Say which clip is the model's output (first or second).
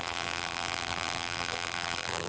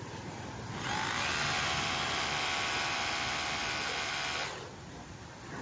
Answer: first